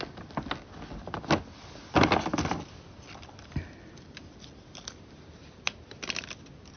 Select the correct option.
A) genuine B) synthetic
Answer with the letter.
A